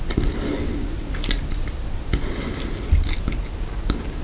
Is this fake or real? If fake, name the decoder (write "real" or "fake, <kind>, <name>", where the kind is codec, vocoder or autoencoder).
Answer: real